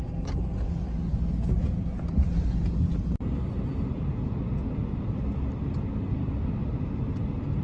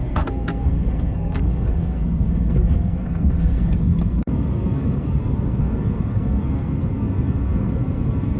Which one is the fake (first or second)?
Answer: second